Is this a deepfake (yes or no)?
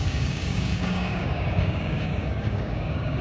yes